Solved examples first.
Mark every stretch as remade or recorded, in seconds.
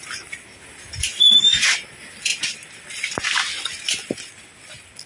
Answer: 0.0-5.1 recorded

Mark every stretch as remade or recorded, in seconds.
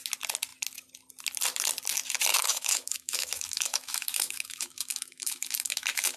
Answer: 0.0-2.3 recorded; 2.3-6.2 remade